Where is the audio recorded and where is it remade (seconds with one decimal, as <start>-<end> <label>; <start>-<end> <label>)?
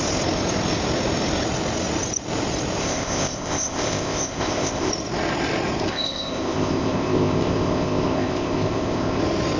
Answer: 0.0-2.8 recorded; 2.8-4.9 remade; 4.9-5.9 recorded; 5.9-9.2 remade; 9.2-9.6 recorded